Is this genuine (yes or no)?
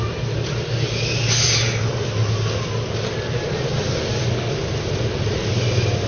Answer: yes